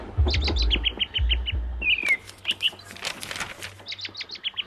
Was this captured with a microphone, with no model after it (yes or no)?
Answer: yes